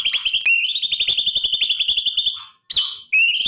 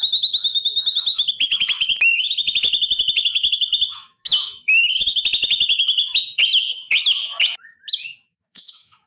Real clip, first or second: first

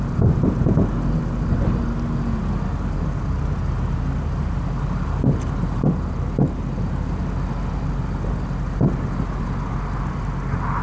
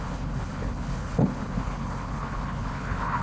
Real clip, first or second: first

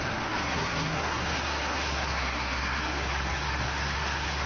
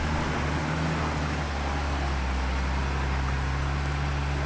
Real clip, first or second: second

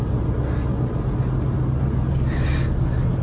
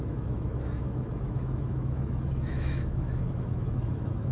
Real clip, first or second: first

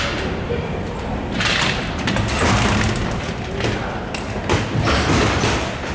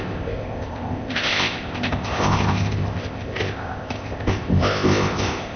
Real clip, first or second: first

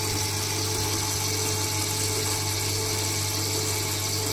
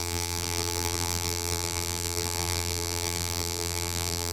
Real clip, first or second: first